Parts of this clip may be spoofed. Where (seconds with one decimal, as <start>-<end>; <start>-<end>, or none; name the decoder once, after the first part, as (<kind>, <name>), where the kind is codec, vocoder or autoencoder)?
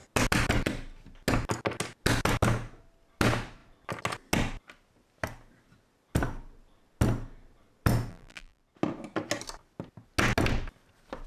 8.1-8.6 (vocoder, BigVGAN v2)